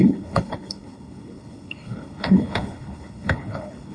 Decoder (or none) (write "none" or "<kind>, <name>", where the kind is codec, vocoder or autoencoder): codec, HILCodec